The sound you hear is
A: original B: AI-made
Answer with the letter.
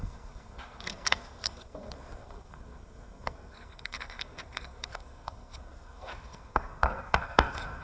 B